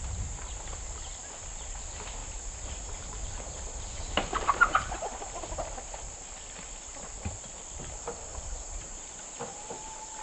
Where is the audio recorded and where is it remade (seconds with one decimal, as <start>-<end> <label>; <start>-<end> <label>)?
0.0-2.2 recorded; 2.2-5.5 remade; 5.5-8.3 recorded; 8.3-10.2 remade